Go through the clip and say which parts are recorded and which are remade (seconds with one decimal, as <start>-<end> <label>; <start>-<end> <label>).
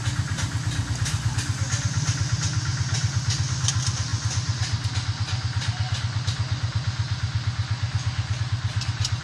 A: 0.0-9.2 recorded